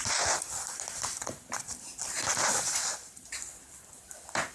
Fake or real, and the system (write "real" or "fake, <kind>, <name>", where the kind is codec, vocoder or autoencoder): fake, vocoder, BigVGAN v2